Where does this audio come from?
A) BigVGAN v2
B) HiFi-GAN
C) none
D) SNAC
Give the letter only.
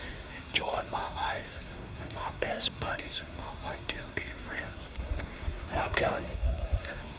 D